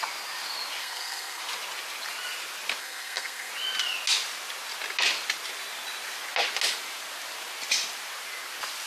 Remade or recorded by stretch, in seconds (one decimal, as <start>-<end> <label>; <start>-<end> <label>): 0.0-0.8 recorded; 0.8-1.4 remade; 1.4-2.8 recorded; 2.8-3.5 remade; 3.5-8.9 recorded